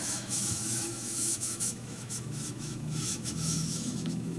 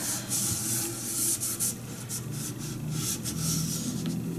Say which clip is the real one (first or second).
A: second